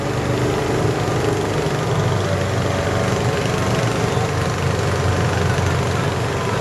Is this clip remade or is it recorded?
recorded